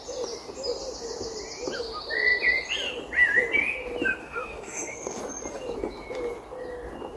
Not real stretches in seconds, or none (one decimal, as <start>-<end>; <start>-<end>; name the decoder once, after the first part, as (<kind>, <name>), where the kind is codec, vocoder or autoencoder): 4.2-5.2 (autoencoder, DAC-VAE)